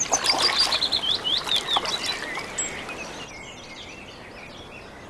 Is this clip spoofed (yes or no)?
no